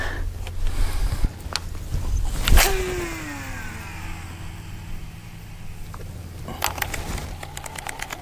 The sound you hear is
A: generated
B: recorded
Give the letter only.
B